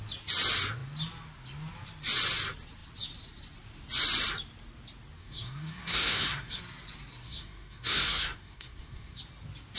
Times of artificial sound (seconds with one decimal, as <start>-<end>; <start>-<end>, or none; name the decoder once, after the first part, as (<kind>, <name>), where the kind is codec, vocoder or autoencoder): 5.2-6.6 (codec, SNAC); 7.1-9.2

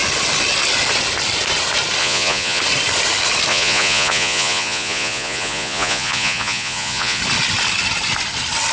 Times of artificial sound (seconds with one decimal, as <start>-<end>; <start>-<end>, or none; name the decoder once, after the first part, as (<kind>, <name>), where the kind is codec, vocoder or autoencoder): 2.0-2.6 (vocoder, Vocos); 3.5-7.2

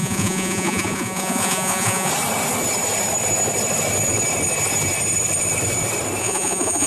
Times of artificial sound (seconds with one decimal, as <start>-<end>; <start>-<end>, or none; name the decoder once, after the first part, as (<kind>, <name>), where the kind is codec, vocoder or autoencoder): 0.0-2.1 (vocoder, Vocos); 6.2-6.9